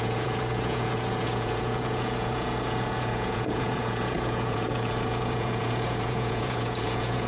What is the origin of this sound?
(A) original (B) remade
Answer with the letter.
B